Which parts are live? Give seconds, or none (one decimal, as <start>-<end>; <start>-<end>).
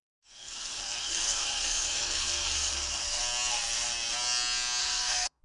3.2-4.8